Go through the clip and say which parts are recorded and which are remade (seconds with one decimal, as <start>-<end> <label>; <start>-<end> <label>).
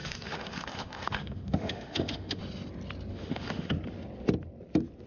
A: 0.0-2.4 remade; 2.4-3.1 recorded; 3.1-3.7 remade; 3.7-5.1 recorded